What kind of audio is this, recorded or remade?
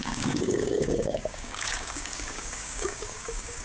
remade